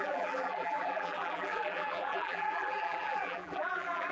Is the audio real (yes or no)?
no